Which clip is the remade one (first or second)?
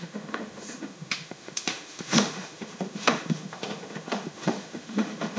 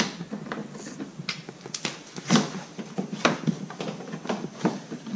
first